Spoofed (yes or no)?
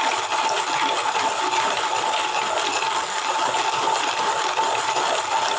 no